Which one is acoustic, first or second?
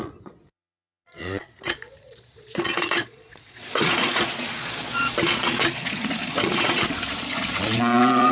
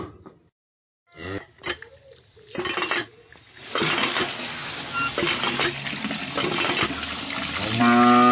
second